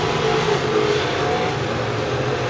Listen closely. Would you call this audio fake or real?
real